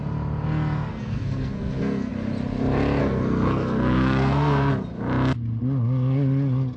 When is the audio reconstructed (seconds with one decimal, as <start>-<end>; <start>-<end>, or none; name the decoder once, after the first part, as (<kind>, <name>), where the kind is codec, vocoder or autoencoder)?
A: 0.9-2.1 (codec, SNAC); 3.0-4.7